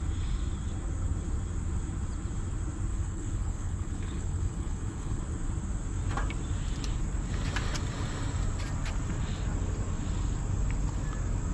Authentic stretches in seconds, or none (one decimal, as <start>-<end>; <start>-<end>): 0.0-2.9; 5.2-11.5